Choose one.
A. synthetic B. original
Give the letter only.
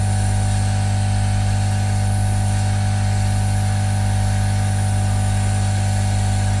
B